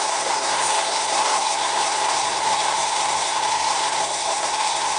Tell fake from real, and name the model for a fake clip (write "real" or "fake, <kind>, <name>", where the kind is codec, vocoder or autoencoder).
fake, codec, SNAC